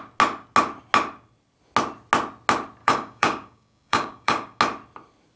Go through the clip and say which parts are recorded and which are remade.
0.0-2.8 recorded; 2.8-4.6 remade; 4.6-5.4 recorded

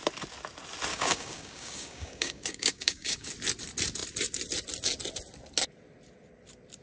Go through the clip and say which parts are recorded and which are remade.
0.0-0.9 recorded; 0.9-3.3 remade; 3.3-6.8 recorded

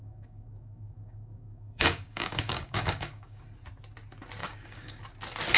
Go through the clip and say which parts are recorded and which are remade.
0.0-3.4 remade; 3.4-4.4 recorded; 4.4-5.0 remade; 5.0-5.6 recorded